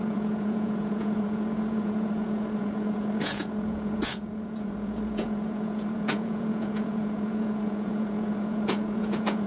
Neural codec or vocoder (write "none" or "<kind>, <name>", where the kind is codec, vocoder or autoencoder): vocoder, Vocos